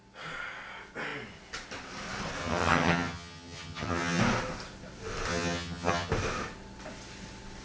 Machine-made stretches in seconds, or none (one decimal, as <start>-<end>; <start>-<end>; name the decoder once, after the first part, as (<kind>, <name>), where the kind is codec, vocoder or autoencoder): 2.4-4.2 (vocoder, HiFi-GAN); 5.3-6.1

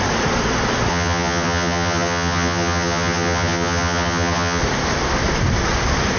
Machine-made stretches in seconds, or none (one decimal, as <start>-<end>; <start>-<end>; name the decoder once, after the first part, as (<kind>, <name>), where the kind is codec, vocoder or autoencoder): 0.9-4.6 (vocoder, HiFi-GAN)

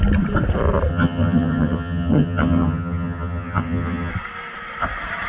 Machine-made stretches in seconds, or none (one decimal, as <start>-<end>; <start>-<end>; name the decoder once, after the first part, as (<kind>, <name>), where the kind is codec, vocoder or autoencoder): 0.9-4.1 (vocoder, HiFi-GAN)

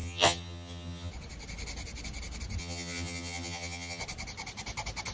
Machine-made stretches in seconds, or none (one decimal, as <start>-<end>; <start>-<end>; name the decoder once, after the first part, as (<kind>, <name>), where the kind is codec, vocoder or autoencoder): 0.0-1.1 (vocoder, HiFi-GAN); 2.6-4.0

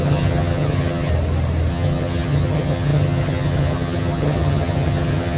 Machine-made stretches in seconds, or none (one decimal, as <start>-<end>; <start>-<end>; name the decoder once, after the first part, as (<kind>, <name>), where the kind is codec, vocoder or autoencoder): 0.0-1.1 (vocoder, HiFi-GAN); 1.7-5.4